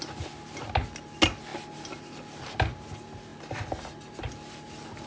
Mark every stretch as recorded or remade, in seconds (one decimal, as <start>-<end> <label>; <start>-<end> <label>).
0.0-5.1 recorded